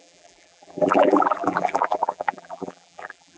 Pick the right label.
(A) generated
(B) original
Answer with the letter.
A